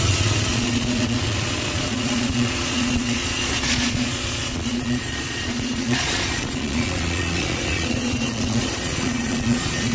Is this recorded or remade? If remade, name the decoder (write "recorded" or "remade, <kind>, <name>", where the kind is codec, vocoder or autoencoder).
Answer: remade, vocoder, Vocos